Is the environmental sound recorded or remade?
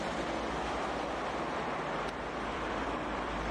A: remade